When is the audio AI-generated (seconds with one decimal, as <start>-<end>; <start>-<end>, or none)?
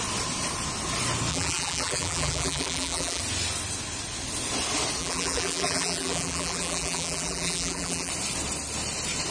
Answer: 1.3-3.2; 5.0-8.1